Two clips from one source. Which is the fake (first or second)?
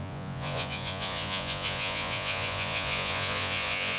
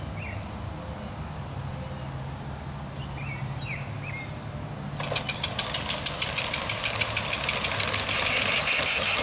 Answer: first